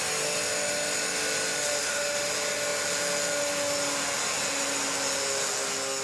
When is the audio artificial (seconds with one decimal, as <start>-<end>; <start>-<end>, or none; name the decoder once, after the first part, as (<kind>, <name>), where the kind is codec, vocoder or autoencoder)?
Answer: 1.8-2.3 (autoencoder, DAC-VAE)